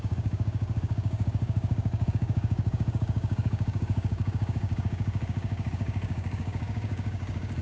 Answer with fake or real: fake